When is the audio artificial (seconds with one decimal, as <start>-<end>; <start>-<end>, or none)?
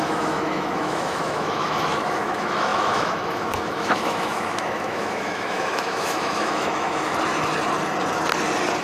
0.0-7.1